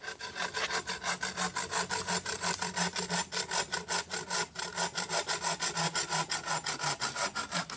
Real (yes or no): yes